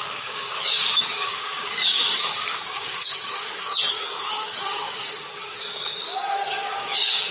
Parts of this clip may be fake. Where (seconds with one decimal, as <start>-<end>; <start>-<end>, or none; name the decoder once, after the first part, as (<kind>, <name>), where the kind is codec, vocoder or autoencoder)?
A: 0.0-7.3 (codec, DAC)